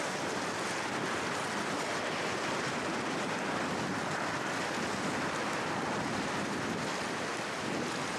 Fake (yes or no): no